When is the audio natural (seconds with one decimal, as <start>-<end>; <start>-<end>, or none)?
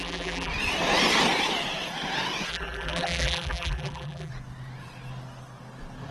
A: 0.5-2.5; 4.3-6.1